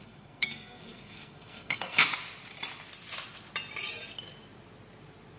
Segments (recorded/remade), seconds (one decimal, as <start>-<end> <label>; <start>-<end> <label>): 0.0-2.0 remade; 2.0-5.4 recorded